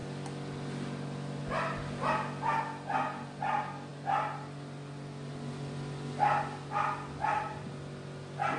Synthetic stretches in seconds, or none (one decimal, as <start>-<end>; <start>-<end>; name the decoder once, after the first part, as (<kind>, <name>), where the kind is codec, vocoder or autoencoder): none